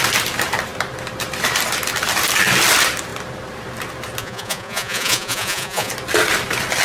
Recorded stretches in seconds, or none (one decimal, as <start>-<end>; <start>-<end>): 0.0-4.2; 5.9-6.8